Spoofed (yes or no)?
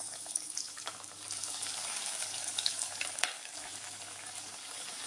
yes